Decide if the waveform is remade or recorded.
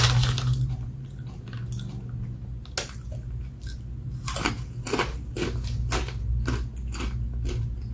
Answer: recorded